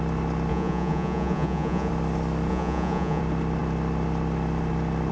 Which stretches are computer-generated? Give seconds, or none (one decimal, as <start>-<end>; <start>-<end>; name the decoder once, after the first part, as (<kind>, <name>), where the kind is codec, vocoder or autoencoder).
0.5-1.9 (vocoder, Vocos); 2.5-3.2